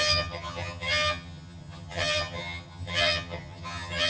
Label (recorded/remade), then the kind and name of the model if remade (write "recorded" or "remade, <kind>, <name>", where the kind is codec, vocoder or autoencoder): remade, vocoder, HiFi-GAN